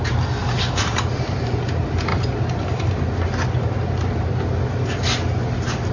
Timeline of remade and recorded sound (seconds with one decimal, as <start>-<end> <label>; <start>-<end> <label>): 0.0-5.9 recorded